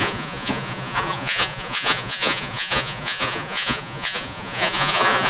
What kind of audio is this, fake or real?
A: fake